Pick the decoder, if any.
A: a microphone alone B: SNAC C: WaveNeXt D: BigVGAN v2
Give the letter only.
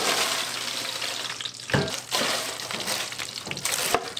A